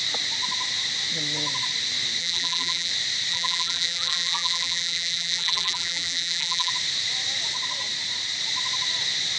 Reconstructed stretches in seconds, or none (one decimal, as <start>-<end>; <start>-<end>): 2.2-2.9; 3.3-6.7